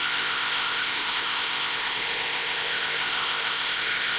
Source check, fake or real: fake